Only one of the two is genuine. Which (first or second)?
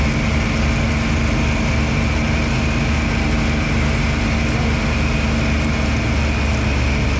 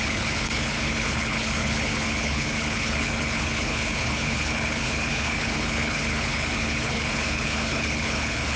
first